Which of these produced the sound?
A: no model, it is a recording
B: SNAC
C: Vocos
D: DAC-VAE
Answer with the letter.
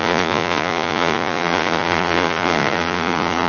C